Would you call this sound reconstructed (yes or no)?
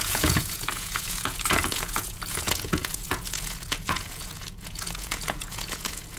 yes